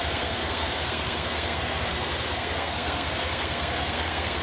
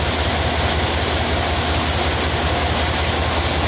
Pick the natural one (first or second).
second